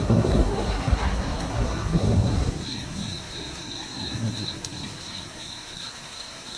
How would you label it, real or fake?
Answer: fake